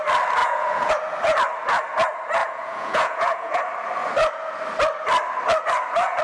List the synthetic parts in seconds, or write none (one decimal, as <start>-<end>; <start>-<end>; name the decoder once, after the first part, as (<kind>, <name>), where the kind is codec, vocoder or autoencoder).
0.4-0.9 (vocoder, Vocos); 2.4-3.6